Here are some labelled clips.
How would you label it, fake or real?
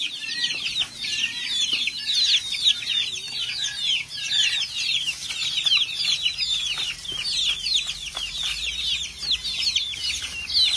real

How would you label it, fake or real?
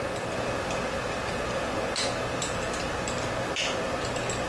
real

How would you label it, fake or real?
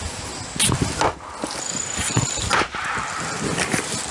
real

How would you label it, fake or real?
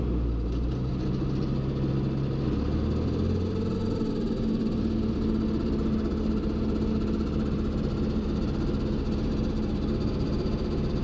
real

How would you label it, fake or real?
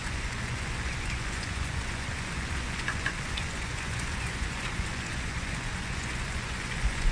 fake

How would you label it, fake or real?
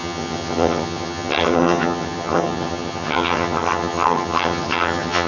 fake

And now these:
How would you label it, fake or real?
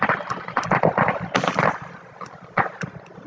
real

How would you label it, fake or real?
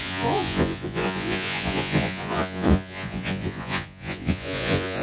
fake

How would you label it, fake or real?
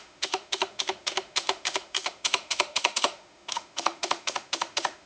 fake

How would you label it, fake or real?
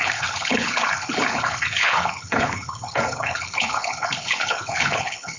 fake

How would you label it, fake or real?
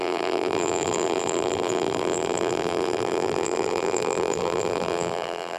fake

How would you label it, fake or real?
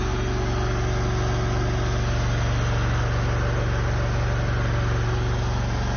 real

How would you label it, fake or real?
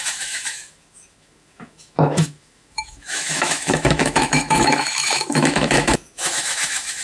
fake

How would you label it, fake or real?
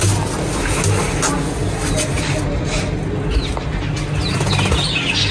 real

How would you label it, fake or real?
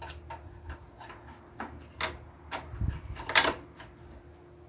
real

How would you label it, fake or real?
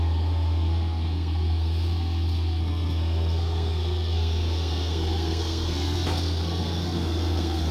fake